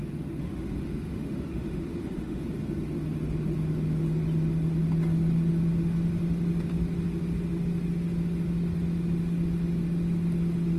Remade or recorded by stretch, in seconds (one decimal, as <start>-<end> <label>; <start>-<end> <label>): 0.0-0.4 recorded; 0.4-2.4 remade; 2.4-10.8 recorded